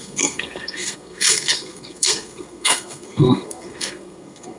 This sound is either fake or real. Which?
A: fake